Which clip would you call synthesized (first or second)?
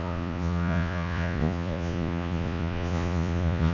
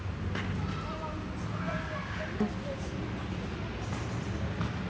first